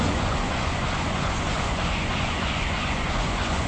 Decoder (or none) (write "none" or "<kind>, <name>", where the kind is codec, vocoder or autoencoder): vocoder, Vocos